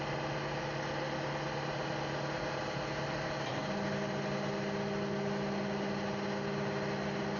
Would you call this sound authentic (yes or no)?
yes